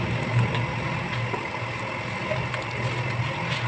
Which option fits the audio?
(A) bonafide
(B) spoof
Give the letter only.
A